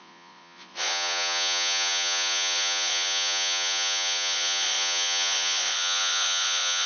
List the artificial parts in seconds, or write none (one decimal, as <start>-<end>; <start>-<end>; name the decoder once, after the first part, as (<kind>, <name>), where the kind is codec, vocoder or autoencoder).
0.0-6.9 (vocoder, Vocos)